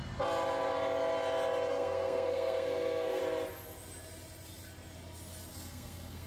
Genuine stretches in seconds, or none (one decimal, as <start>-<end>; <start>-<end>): 0.0-1.7; 3.2-5.5